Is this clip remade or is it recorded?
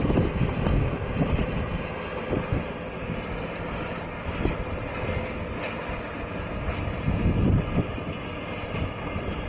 recorded